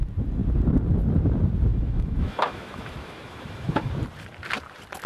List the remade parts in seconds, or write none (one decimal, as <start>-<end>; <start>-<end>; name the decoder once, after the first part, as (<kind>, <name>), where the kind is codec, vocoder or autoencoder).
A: 1.7-3.9 (autoencoder, DAC-VAE)